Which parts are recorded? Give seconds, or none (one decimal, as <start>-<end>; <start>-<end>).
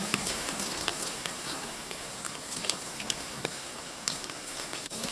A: none